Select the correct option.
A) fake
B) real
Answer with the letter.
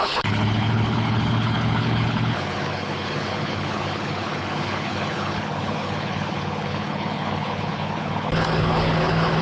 A